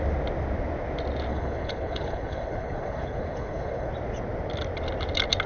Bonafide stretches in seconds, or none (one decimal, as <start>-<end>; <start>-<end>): 0.0-1.3; 3.9-5.5